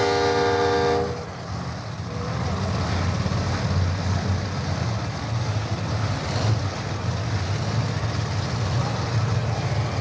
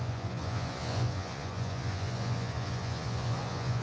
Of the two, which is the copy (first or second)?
second